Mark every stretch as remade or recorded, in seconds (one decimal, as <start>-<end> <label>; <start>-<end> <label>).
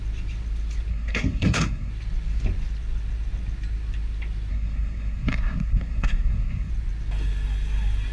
0.0-0.9 recorded; 0.9-1.9 remade; 1.9-4.5 recorded; 4.5-6.7 remade; 6.7-8.1 recorded